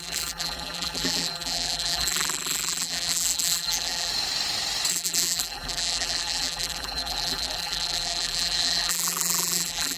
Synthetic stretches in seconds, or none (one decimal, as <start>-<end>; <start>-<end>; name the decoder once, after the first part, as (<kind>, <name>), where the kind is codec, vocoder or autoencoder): 0.0-4.1 (vocoder, BigVGAN v2); 4.9-10.0